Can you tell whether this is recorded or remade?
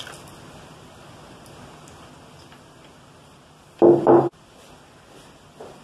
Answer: recorded